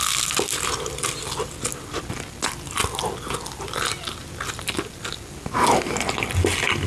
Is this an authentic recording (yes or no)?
yes